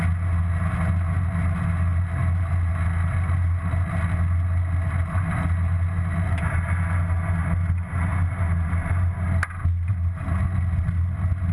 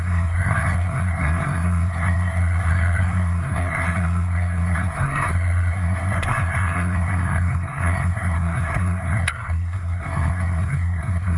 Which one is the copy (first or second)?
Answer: second